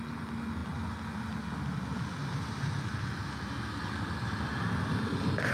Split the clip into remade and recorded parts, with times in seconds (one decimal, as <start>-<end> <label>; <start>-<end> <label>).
0.0-5.5 recorded